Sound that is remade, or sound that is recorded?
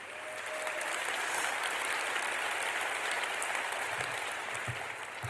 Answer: recorded